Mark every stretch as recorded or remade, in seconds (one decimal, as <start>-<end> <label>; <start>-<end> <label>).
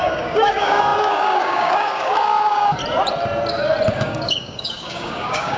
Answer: 0.0-2.8 remade; 2.8-3.9 recorded; 3.9-5.6 remade